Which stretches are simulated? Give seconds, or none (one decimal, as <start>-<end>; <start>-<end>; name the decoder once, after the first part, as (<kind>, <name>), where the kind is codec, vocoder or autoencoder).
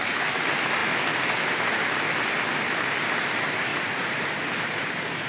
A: 3.7-4.2 (vocoder, Vocos)